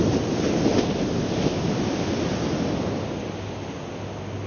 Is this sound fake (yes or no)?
no